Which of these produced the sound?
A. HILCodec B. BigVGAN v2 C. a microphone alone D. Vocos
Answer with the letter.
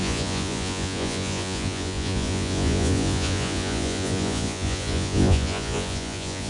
D